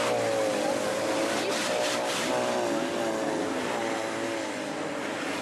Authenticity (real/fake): real